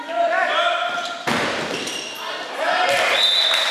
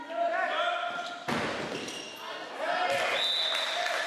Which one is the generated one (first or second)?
first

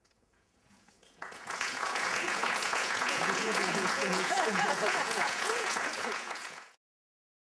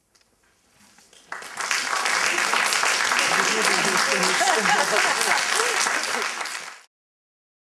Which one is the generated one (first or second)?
first